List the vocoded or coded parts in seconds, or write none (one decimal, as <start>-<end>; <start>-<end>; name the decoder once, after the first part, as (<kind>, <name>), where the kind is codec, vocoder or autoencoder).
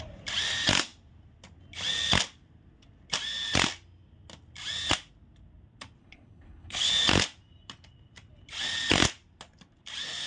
6.0-6.9 (codec, HILCodec)